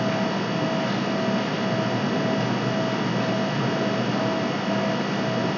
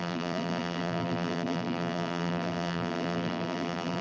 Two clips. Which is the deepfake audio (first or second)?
second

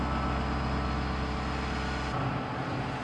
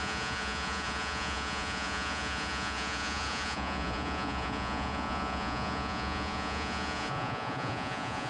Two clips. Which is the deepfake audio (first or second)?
second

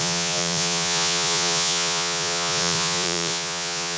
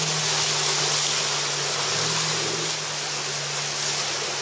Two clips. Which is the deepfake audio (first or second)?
first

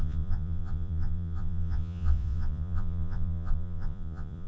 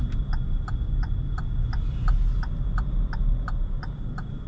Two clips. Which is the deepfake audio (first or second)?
first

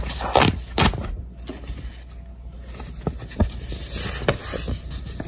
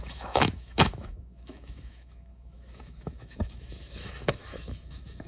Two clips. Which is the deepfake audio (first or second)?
second